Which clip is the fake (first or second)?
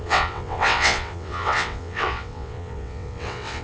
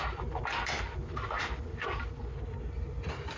first